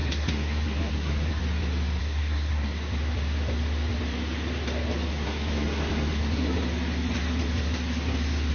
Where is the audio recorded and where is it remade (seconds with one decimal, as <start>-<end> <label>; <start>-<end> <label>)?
0.0-1.4 remade; 1.4-2.0 recorded; 2.0-2.7 remade; 2.7-5.1 recorded; 5.1-6.4 remade; 6.4-8.5 recorded